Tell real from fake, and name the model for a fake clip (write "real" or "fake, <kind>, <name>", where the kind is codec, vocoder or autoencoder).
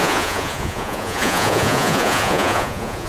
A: fake, vocoder, Vocos